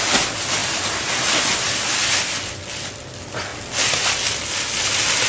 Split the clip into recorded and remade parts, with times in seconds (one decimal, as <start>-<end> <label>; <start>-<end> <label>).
0.0-5.3 recorded